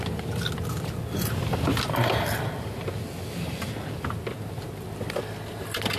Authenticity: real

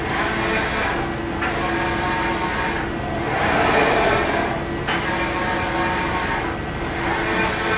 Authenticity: real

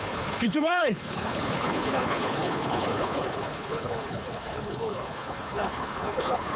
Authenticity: fake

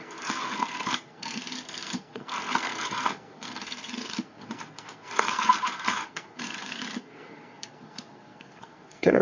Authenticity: fake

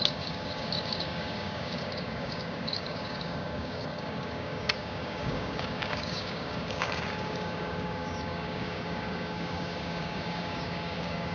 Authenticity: fake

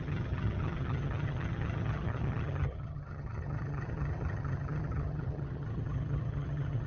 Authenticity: fake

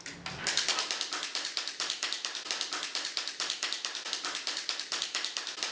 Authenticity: real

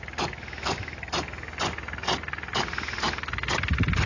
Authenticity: real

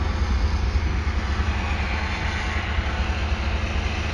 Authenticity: real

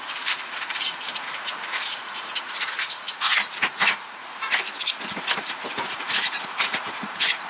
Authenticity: fake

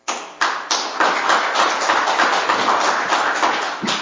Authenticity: real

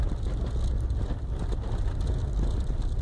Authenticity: real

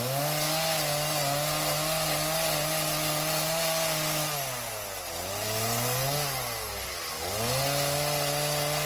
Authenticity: real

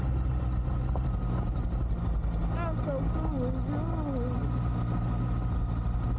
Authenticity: real